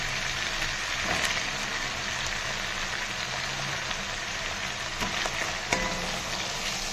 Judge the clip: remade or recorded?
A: recorded